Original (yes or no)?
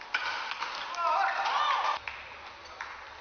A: yes